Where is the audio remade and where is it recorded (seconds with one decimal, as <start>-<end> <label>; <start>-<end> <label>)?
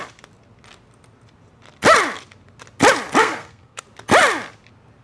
0.0-3.2 recorded; 3.2-3.8 remade; 3.8-5.0 recorded